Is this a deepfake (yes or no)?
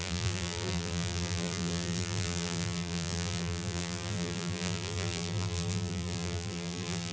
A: yes